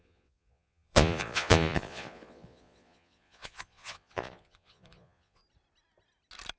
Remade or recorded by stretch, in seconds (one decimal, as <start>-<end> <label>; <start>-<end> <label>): 0.0-5.4 remade; 5.4-6.6 recorded